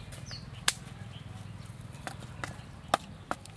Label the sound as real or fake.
real